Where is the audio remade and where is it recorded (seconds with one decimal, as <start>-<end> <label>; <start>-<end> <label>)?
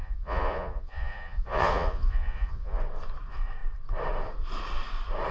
0.0-2.8 remade; 2.8-5.3 recorded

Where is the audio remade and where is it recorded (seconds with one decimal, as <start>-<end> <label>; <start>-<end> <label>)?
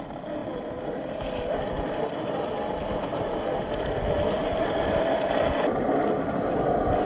0.0-0.4 recorded; 0.4-1.2 remade; 1.2-3.1 recorded; 3.1-3.9 remade; 3.9-4.4 recorded; 4.4-5.6 remade; 5.6-7.1 recorded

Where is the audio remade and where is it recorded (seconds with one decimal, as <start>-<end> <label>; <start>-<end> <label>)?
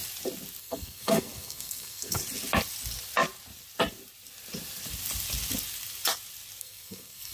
0.0-0.6 recorded; 0.6-2.2 remade; 2.2-6.6 recorded; 6.6-7.3 remade